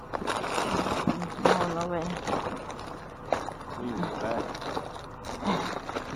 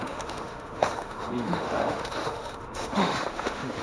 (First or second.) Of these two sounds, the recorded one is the first